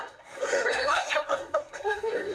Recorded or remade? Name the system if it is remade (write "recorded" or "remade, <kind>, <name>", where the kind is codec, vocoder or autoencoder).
remade, codec, SNAC